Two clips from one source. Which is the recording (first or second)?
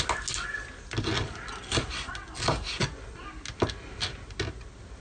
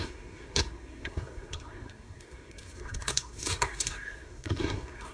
first